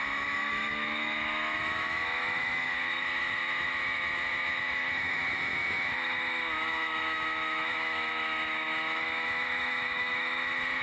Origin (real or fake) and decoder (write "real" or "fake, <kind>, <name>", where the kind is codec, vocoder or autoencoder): fake, autoencoder, DAC-VAE